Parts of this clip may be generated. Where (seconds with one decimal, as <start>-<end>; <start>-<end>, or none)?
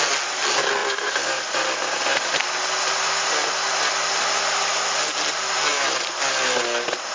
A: 0.8-1.6